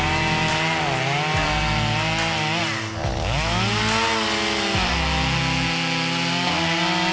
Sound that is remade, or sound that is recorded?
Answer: recorded